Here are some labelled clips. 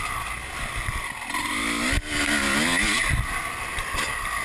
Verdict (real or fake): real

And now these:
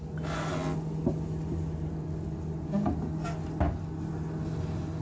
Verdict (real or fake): real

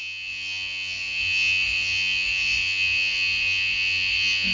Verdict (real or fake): fake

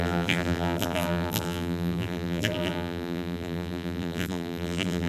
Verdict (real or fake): fake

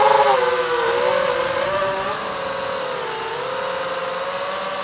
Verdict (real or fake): real